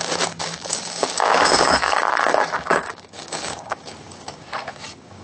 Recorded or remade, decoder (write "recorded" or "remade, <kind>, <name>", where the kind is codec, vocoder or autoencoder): remade, codec, DAC